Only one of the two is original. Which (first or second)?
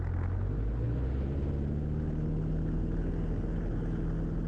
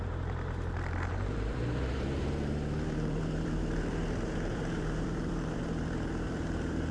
first